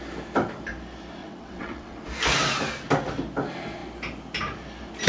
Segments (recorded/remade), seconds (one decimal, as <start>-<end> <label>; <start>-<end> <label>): 0.0-1.2 recorded; 1.2-2.0 remade; 2.0-5.1 recorded